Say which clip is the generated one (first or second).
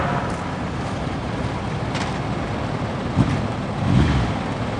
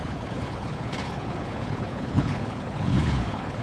second